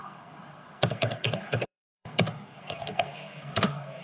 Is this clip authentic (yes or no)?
no